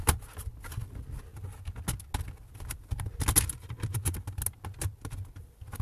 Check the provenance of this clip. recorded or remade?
recorded